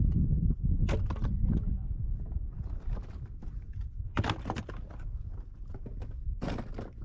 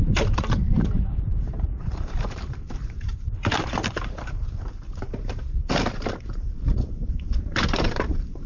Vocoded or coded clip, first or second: second